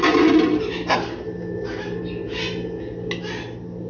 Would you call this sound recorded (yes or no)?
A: yes